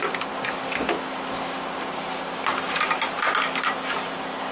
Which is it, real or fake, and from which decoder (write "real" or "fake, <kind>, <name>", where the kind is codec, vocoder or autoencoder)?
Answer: real